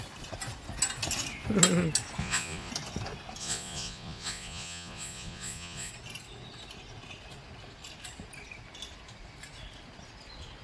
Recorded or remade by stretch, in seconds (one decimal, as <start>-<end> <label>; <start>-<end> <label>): 0.0-2.2 recorded; 2.2-2.7 remade; 2.7-3.4 recorded; 3.4-5.9 remade; 5.9-10.6 recorded